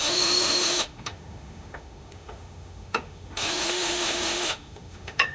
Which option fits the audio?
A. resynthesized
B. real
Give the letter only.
A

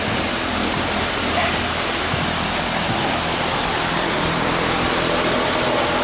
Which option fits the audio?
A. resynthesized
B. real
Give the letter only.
B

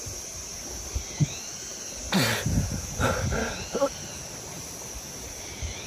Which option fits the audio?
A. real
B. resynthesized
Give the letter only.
A